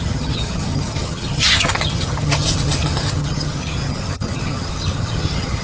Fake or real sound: fake